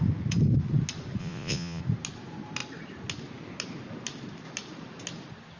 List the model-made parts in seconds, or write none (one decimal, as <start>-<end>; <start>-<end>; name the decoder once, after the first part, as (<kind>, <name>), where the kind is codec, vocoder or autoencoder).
1.2-1.8 (vocoder, Vocos)